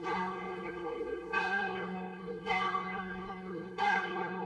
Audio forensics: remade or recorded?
remade